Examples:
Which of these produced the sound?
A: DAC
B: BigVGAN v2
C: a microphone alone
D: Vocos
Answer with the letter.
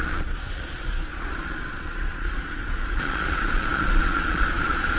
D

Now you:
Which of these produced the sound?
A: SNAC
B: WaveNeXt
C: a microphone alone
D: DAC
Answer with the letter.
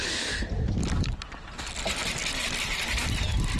C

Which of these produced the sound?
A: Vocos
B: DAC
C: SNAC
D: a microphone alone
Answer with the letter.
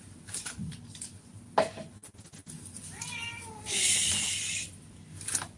D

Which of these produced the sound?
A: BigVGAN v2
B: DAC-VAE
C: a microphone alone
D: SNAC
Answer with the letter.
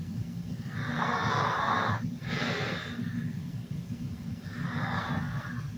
D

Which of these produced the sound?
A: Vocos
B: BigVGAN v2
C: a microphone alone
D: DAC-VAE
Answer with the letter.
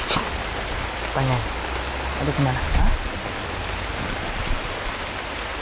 C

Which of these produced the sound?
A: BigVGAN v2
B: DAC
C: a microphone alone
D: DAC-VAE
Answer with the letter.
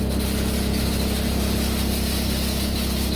C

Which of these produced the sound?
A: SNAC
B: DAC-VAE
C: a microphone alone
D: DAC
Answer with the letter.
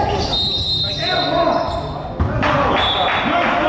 C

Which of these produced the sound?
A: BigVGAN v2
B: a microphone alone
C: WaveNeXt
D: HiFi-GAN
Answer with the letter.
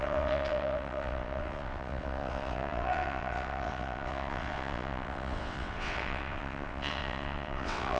C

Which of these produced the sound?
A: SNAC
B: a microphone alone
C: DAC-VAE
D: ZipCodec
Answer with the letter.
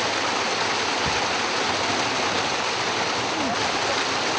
B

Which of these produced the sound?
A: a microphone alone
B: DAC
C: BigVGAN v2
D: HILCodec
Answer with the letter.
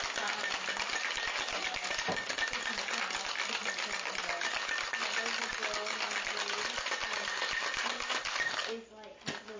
A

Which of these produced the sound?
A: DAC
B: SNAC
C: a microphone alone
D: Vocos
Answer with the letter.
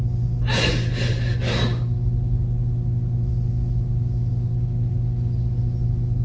C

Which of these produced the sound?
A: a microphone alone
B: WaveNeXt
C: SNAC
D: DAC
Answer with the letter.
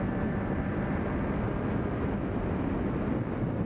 A